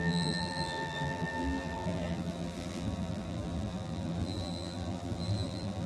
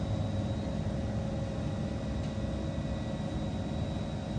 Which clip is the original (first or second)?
second